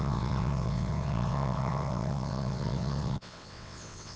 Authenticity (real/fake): fake